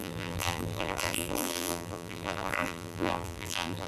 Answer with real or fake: fake